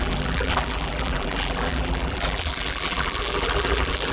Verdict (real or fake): fake